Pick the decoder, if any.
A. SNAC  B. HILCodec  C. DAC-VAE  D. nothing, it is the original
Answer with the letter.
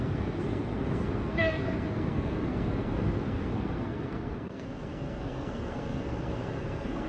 A